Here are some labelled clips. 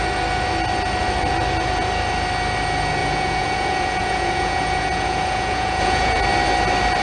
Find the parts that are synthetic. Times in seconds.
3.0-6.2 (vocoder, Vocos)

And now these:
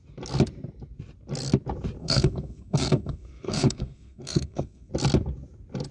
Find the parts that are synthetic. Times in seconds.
2.0-4.9 (codec, SNAC)

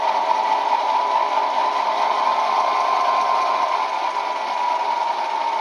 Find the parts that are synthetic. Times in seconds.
none

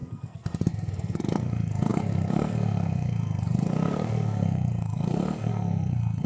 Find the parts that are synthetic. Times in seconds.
0.0-6.3 (codec, SNAC)